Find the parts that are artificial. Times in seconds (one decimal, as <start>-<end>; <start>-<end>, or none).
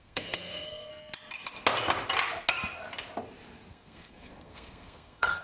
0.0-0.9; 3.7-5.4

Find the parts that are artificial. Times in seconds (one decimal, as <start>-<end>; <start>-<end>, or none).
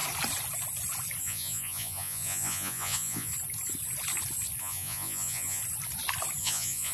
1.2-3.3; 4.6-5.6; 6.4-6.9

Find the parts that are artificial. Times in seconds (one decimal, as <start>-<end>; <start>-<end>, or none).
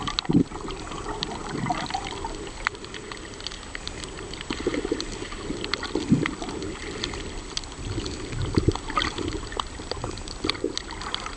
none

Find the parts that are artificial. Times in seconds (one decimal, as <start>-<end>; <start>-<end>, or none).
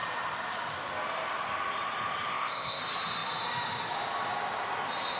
2.3-2.8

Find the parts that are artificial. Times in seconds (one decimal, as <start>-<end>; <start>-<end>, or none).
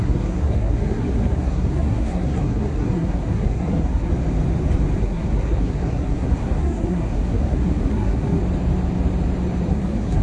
0.0-4.1; 5.0-8.4; 9.7-10.2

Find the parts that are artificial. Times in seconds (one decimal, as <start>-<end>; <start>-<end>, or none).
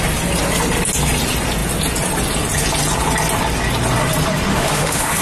4.5-5.2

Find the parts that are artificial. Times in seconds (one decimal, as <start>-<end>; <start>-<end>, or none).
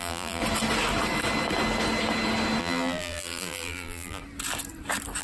0.0-0.4; 2.6-4.2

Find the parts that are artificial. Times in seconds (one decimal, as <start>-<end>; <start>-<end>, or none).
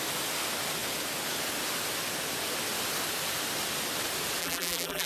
4.4-5.1